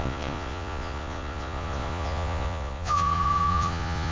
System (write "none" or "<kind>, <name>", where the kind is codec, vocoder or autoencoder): vocoder, Vocos